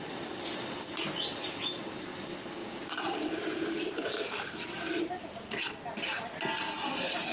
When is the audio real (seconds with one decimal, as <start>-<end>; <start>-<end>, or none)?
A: 0.0-2.6; 5.1-7.3